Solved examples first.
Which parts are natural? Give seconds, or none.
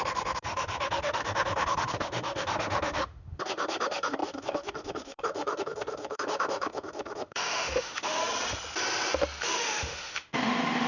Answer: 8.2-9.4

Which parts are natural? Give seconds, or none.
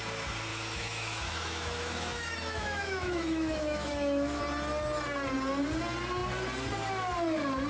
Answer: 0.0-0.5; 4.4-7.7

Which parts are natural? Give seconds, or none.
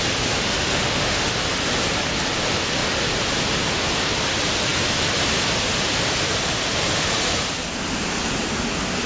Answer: 0.0-0.4; 1.4-9.1